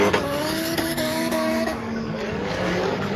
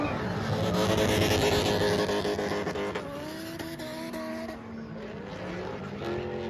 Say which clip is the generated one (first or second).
first